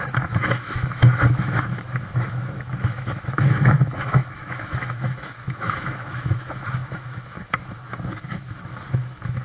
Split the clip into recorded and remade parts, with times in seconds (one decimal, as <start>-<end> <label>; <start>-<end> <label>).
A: 0.0-9.4 remade